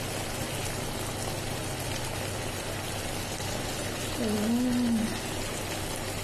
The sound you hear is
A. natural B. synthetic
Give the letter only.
A